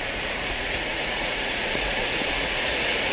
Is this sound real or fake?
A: fake